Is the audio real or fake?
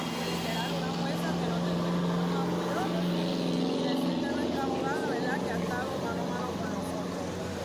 real